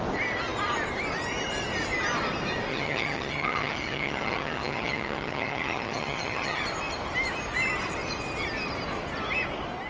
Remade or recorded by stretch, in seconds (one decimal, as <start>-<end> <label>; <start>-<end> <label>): 0.0-2.7 recorded; 2.7-6.6 remade; 6.6-9.9 recorded